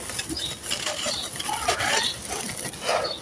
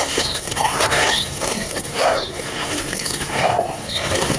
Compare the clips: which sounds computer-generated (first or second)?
second